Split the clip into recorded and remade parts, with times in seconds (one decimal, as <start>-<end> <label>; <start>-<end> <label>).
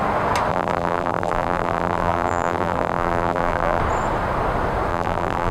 0.0-0.5 recorded; 0.5-3.8 remade; 3.8-4.9 recorded; 4.9-5.5 remade